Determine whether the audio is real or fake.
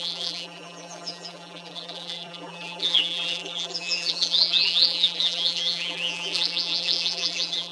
fake